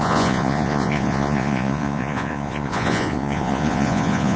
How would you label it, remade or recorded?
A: remade